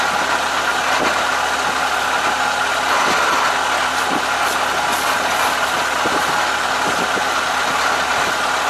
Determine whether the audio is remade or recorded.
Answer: recorded